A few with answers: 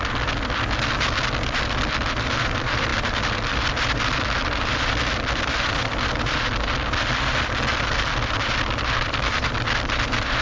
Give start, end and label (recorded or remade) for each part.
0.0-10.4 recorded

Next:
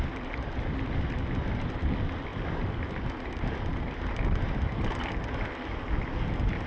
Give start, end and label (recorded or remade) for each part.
0.0-6.7 recorded

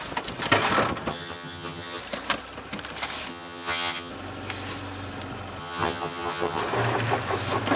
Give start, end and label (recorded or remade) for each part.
0.0-1.1 recorded; 1.1-2.0 remade; 2.0-3.3 recorded; 3.3-4.1 remade; 4.1-5.6 recorded; 5.6-6.6 remade; 6.6-7.8 recorded

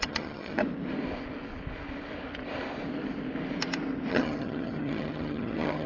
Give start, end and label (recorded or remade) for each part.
0.0-0.6 remade; 0.6-4.1 recorded; 4.1-5.9 remade